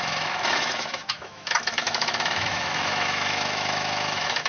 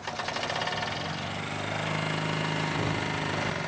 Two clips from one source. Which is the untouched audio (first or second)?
second